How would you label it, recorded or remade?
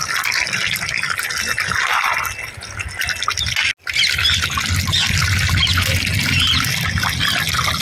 recorded